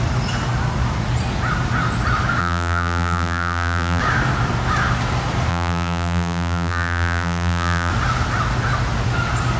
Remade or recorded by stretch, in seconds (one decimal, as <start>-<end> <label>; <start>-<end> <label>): 0.0-2.4 recorded; 2.4-4.0 remade; 4.0-5.5 recorded; 5.5-7.9 remade; 7.9-9.6 recorded